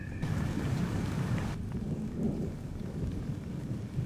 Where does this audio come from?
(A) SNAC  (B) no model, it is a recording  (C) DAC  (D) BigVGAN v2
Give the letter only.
C